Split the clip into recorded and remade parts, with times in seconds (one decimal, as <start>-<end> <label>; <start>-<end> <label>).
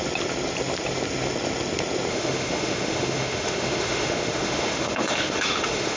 0.0-2.1 recorded; 2.1-6.0 remade